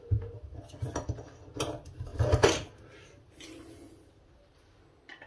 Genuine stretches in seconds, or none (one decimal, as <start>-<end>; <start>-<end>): 0.0-5.3